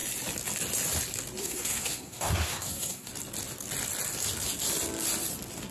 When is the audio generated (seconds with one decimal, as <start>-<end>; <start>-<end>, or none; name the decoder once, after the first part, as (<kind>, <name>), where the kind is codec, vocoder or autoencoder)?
1.4-3.1 (codec, SNAC)